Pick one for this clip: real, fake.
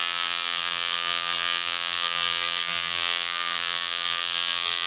fake